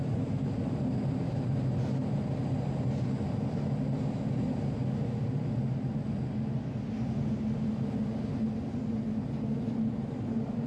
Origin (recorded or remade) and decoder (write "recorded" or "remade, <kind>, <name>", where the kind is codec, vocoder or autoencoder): recorded